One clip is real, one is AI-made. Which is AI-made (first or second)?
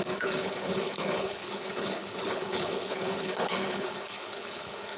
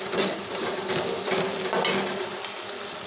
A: first